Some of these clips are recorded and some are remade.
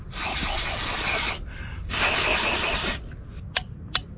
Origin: recorded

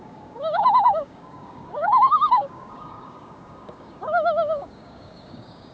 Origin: remade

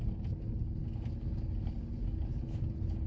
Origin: recorded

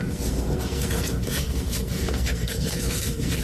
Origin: remade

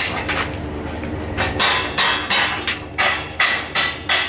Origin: recorded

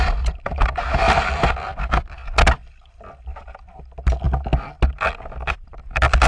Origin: recorded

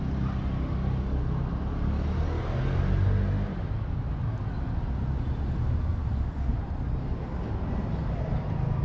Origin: recorded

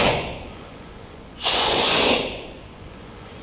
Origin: remade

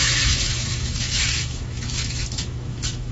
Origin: remade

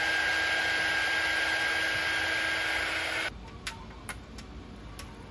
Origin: recorded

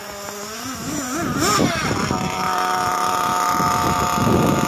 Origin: recorded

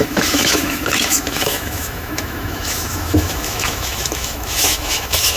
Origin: remade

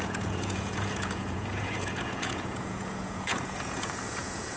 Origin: remade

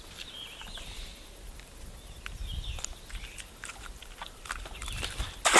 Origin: recorded